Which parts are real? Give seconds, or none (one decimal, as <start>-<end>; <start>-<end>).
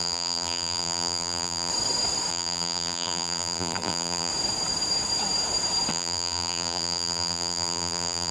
1.7-2.3; 4.3-5.9